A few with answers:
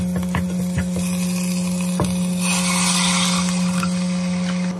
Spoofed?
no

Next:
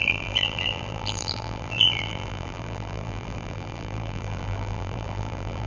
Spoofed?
yes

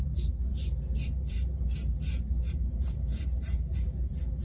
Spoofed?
yes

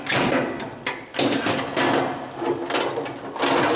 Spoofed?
no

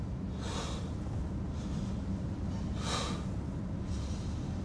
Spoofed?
no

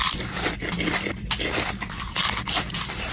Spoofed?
no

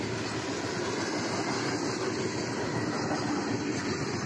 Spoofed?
no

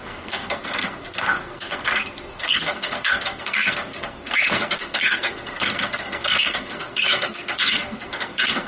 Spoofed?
yes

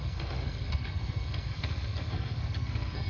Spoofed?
yes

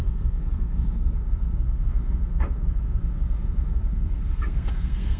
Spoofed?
yes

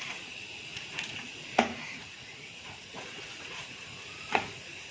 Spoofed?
yes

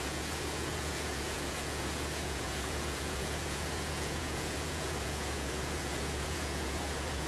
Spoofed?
yes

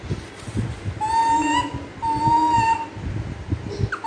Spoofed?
no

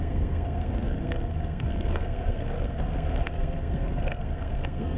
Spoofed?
yes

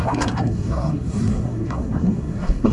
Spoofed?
yes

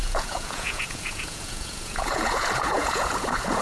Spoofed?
yes